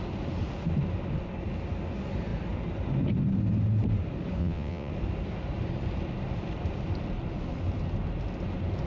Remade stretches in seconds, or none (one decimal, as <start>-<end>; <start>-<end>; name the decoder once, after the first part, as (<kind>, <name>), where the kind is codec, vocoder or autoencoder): 4.4-4.9 (vocoder, WaveNeXt)